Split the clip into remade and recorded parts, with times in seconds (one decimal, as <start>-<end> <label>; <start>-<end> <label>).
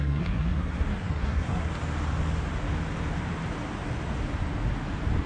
0.0-1.7 remade; 1.7-5.3 recorded